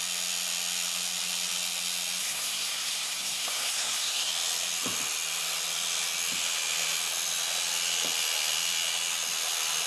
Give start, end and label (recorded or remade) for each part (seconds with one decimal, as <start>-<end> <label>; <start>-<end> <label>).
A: 0.0-2.2 recorded; 2.2-4.3 remade; 4.3-9.9 recorded